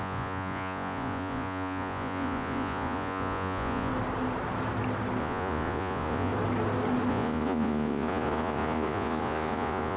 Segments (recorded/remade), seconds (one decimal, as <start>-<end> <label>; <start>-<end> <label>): 0.0-3.9 remade; 3.9-5.2 recorded; 5.2-6.3 remade; 6.3-7.1 recorded; 7.1-10.0 remade